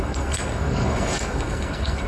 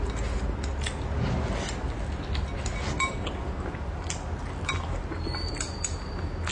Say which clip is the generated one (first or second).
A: first